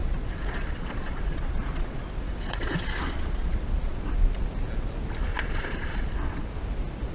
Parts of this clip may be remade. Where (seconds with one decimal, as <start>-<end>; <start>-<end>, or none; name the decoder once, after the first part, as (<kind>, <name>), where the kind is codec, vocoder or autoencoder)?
0.0-4.0 (vocoder, Vocos); 5.3-6.1

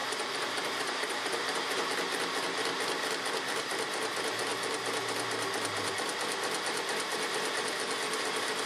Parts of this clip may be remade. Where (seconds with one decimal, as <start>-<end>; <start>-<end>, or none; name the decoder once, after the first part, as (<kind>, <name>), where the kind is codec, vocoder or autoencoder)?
0.0-1.9 (vocoder, BigVGAN v2)

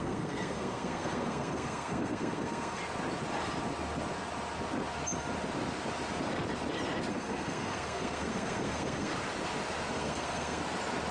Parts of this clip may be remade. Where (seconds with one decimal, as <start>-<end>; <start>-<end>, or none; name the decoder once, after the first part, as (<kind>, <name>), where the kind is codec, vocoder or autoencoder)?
0.0-2.8 (codec, SNAC); 7.1-9.1; 9.9-10.6

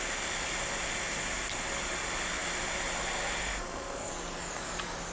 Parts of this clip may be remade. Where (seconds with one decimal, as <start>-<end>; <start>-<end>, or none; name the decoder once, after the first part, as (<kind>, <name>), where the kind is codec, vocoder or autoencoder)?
3.4-4.1 (codec, SNAC)

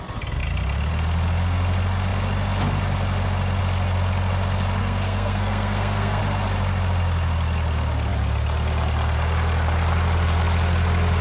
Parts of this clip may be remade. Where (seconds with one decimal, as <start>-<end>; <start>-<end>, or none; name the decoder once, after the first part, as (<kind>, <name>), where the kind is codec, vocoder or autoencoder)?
4.8-6.2 (codec, SNAC)

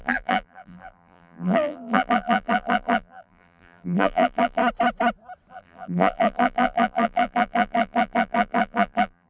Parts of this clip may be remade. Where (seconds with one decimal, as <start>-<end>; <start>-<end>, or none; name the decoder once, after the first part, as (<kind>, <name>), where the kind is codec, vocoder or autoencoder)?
0.0-4.6 (vocoder, BigVGAN v2); 5.5-9.3